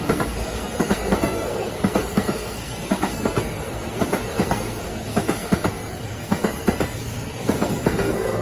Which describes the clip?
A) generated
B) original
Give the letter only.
A